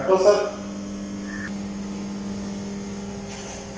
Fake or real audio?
real